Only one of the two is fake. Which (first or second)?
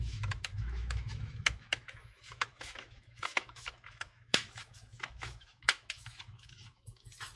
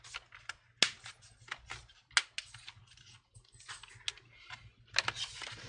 first